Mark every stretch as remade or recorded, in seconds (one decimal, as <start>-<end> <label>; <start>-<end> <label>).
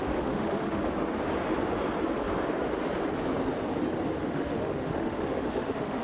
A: 0.0-0.8 remade; 0.8-4.2 recorded; 4.2-6.0 remade